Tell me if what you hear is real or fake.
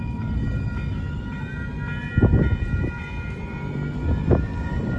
real